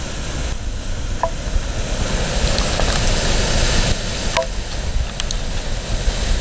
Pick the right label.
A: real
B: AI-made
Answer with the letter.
A